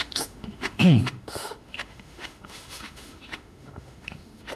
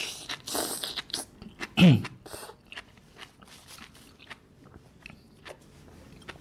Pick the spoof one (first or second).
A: first